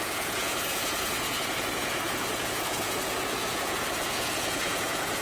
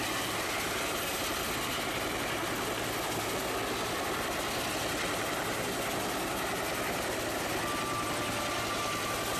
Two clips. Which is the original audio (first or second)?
second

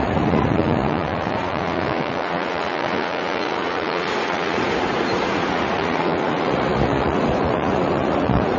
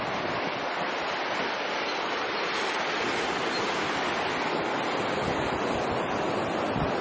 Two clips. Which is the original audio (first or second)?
second